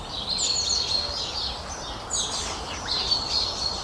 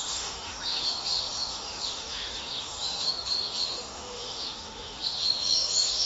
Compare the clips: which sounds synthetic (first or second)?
second